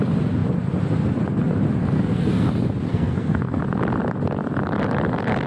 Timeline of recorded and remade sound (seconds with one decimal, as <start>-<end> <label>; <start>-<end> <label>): 0.0-1.8 recorded; 1.8-2.5 remade; 2.5-2.9 recorded; 2.9-3.6 remade; 3.6-5.5 recorded